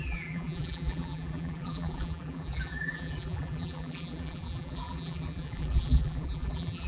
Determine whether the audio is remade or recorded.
remade